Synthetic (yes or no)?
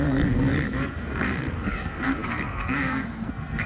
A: yes